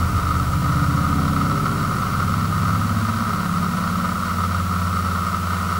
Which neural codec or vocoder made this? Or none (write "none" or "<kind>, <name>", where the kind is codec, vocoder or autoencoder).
none